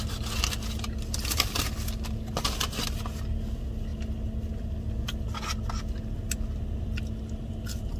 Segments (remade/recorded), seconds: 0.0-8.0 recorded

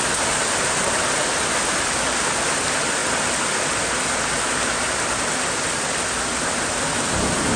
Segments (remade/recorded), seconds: 0.0-1.2 recorded; 1.2-2.6 remade; 2.6-3.0 recorded; 3.0-6.4 remade; 6.4-7.6 recorded

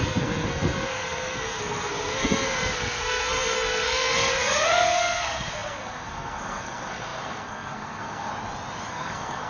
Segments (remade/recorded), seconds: 0.0-8.3 remade; 8.3-8.9 recorded; 8.9-9.5 remade

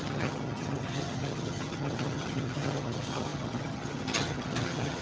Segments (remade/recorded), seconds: 0.0-5.0 remade

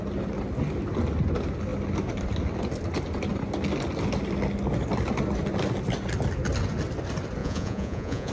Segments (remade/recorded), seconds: 0.0-7.4 recorded; 7.4-8.3 remade

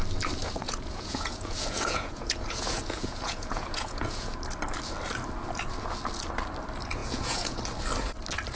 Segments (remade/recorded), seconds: 0.0-0.4 recorded; 0.4-4.4 remade; 4.4-7.0 recorded; 7.0-7.6 remade; 7.6-8.6 recorded